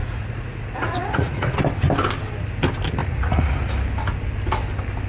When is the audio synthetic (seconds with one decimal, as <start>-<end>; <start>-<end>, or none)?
0.0-1.6; 3.0-3.7